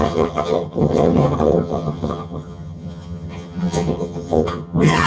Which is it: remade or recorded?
remade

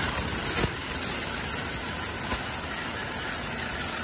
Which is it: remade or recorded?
recorded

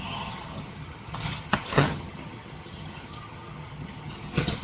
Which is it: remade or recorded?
remade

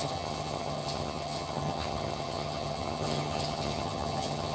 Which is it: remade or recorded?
remade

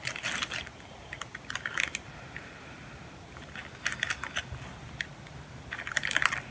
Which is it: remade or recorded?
recorded